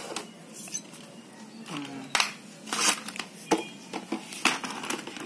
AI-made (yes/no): no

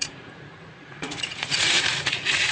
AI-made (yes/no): yes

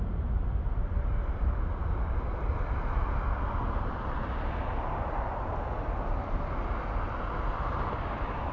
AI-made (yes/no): no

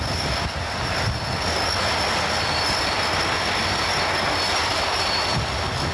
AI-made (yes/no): no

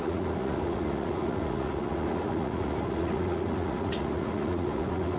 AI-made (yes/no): yes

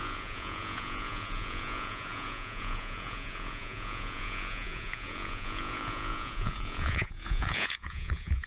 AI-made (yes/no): yes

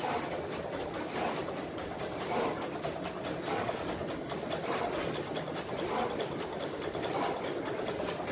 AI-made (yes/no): no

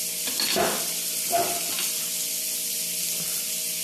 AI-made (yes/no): no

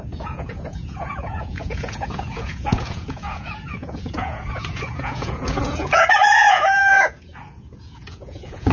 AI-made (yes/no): yes